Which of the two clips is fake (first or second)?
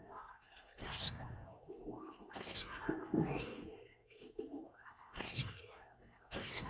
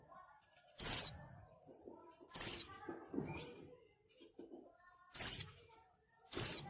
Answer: first